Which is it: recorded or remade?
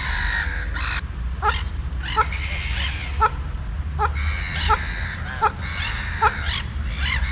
recorded